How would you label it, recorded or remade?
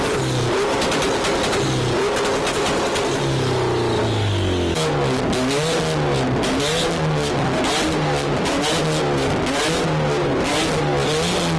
recorded